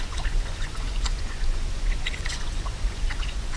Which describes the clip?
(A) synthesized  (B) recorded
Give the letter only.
A